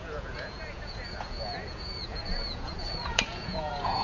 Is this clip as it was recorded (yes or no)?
no